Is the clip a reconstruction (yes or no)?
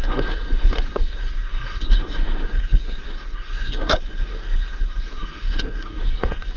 yes